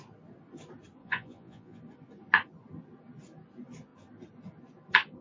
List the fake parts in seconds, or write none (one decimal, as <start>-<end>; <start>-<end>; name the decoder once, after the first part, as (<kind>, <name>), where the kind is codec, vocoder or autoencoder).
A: 1.0-1.8 (vocoder, Vocos)